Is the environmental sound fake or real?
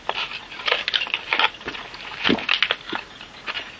real